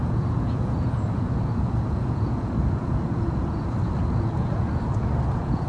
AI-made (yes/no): yes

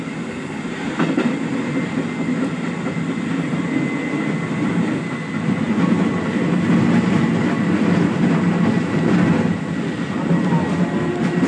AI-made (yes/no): no